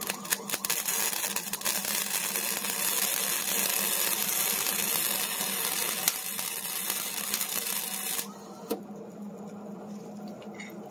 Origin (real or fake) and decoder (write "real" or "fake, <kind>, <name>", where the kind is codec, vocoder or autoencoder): real